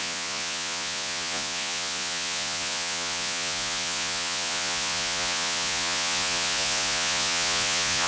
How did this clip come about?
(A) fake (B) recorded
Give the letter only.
A